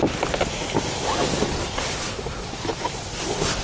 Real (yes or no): yes